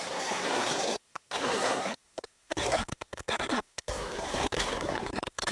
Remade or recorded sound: remade